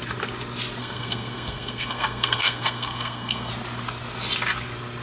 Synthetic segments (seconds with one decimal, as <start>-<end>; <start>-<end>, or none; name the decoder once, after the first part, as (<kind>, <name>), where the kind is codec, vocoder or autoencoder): 0.8-3.5 (codec, SNAC)